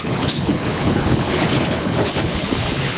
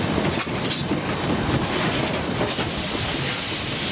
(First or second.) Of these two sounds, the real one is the second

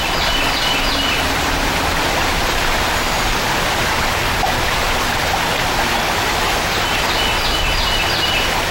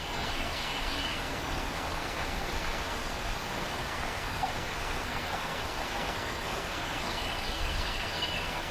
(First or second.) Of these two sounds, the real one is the first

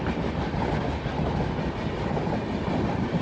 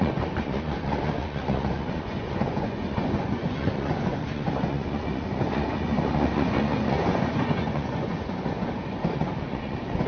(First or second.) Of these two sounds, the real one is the first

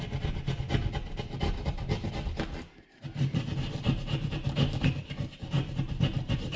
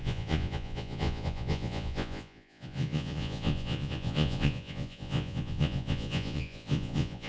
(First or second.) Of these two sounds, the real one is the first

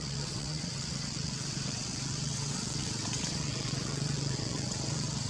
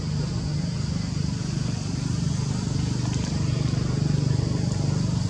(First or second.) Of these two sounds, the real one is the second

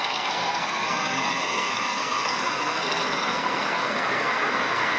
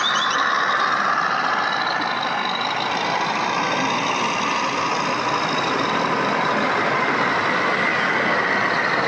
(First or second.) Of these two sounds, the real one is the second